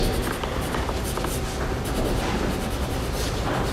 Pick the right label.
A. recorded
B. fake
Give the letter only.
A